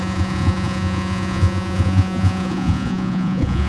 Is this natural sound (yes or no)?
no